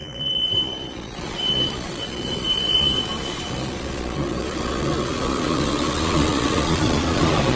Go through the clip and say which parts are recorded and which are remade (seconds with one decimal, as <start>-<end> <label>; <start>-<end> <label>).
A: 0.0-7.6 remade